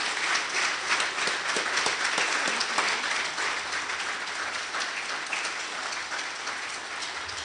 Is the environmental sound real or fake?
real